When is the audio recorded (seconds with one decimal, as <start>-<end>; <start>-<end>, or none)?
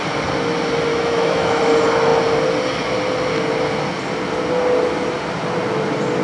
0.0-0.9; 1.6-6.2